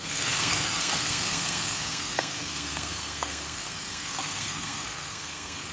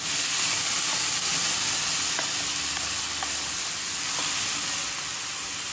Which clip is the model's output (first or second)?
first